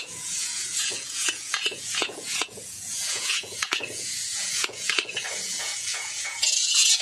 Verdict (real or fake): fake